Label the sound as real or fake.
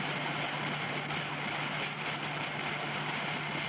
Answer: real